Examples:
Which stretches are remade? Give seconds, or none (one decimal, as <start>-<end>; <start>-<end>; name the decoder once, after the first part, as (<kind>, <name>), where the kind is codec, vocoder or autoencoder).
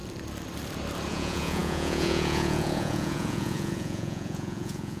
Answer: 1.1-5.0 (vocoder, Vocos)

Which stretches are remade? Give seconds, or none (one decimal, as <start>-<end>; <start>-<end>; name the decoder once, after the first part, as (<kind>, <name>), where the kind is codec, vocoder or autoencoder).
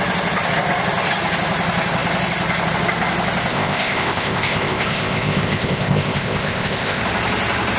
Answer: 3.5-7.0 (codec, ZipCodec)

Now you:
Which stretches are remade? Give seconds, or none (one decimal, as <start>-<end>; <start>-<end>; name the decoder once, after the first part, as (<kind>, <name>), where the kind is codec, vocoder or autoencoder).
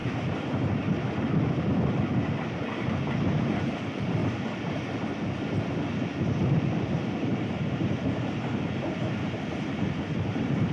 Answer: 1.9-4.2 (vocoder, BigVGAN v2); 6.2-10.7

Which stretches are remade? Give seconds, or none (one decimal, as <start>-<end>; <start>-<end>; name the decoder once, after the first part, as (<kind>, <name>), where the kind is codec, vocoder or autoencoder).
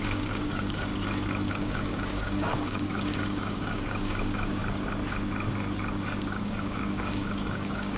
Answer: 0.0-0.9 (codec, DAC); 1.5-4.6; 6.4-8.0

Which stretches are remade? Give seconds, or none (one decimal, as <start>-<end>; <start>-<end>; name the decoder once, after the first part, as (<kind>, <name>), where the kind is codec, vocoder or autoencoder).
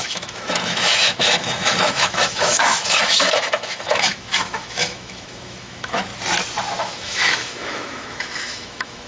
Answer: 0.0-6.1 (autoencoder, DAC-VAE); 6.8-9.1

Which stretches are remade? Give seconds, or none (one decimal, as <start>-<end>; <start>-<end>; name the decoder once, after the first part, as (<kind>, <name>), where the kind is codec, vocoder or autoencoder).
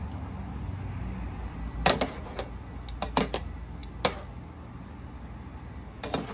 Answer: none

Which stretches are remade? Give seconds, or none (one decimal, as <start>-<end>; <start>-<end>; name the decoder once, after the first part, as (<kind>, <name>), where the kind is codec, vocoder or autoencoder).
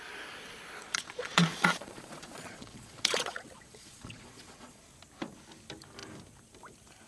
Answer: 0.8-4.8 (vocoder, Vocos)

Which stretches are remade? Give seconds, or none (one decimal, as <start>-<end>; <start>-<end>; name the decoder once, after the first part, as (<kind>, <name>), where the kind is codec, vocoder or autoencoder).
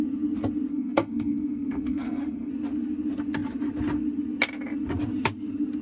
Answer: 0.7-2.5 (codec, SNAC)